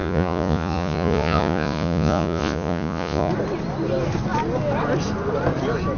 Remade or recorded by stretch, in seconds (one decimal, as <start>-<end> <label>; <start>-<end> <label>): 0.0-3.3 remade; 3.3-6.0 recorded